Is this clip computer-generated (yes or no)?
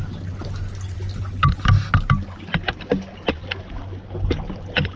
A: no